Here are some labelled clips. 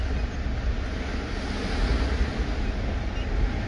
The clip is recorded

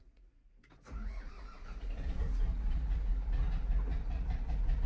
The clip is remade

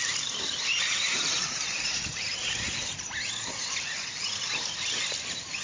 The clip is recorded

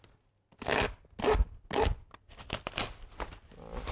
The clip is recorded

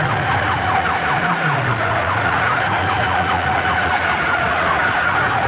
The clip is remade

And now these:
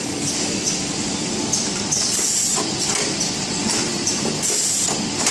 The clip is remade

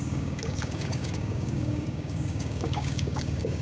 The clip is remade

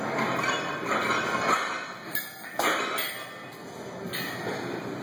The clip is recorded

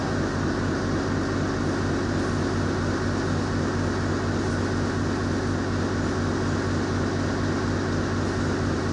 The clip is recorded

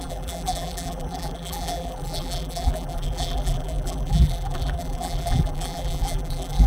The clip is remade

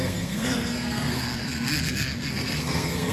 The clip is remade